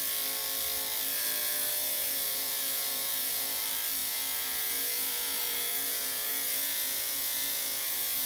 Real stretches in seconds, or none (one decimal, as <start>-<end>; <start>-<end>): 0.0-1.4; 3.6-4.0